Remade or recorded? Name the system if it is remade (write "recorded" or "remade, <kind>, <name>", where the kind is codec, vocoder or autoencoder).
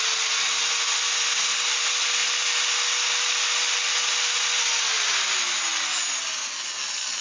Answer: recorded